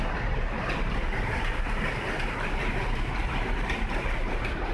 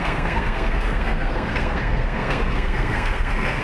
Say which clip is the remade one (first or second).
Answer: second